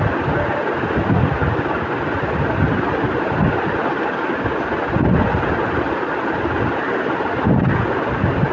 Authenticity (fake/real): real